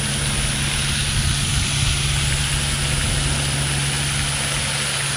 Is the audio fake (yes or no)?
no